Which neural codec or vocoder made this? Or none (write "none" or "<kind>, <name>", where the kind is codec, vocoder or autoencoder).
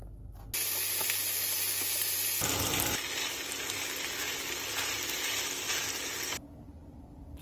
none